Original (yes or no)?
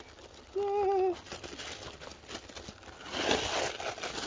yes